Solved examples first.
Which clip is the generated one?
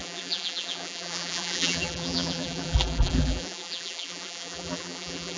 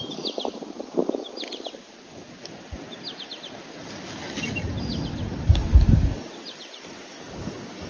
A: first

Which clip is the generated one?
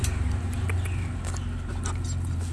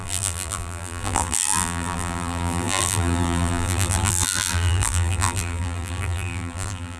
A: second